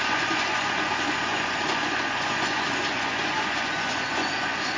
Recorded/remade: remade